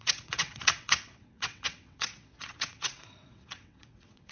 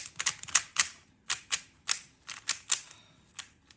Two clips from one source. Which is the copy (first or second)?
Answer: first